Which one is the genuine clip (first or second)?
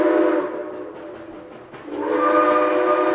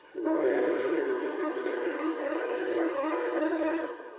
first